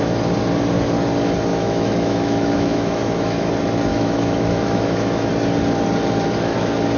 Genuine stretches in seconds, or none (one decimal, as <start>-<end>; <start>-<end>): 0.0-1.5; 3.5-3.9; 5.3-7.0